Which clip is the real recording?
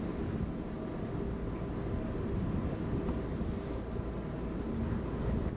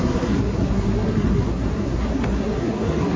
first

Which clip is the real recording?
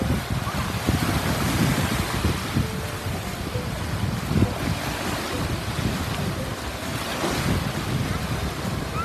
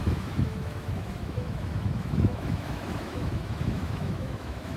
first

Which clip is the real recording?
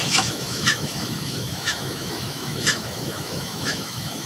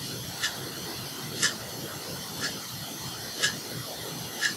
second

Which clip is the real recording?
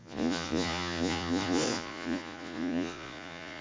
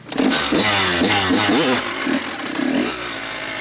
second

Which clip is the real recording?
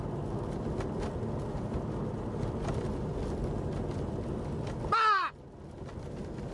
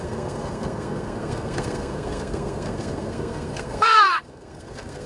first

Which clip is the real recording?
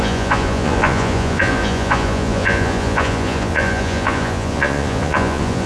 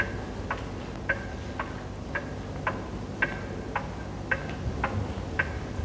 second